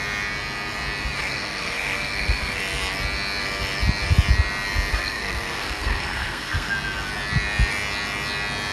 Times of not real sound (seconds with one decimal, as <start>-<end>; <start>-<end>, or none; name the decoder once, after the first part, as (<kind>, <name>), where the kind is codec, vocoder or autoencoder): 1.2-2.6 (codec, SNAC); 4.9-6.7